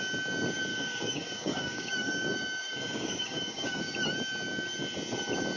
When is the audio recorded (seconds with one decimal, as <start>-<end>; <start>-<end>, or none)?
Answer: 0.0-0.7; 3.8-5.6